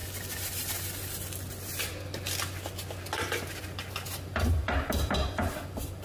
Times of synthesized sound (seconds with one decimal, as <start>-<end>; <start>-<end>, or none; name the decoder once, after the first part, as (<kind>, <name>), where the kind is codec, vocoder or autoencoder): none